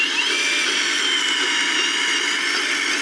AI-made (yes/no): no